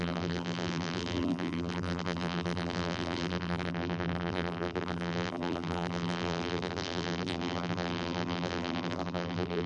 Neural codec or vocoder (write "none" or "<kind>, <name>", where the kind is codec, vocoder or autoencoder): vocoder, BigVGAN v2